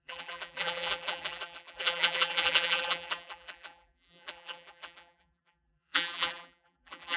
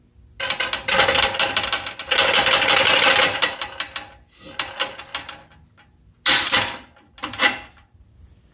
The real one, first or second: second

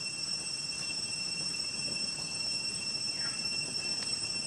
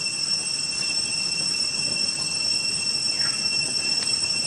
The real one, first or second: second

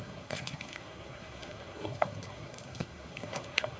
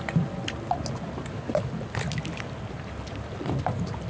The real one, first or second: second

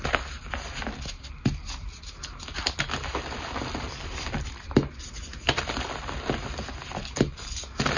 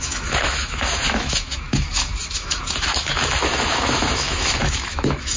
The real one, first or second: first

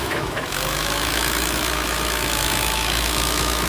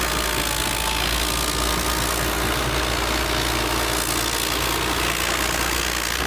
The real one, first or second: second